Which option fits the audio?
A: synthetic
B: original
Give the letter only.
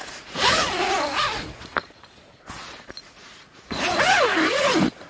A